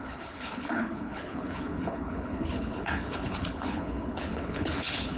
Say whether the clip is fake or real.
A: fake